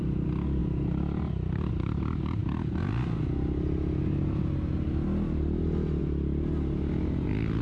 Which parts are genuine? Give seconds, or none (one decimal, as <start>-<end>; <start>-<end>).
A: 0.0-7.6